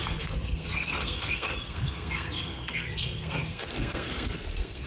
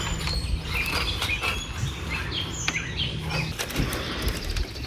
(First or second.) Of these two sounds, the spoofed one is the first